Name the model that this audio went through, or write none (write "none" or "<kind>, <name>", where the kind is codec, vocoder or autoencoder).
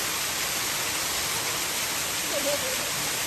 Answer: none